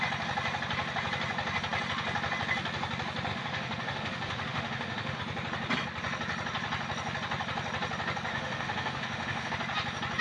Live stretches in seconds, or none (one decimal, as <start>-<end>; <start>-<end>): 0.0-3.3; 5.2-8.3; 9.5-10.2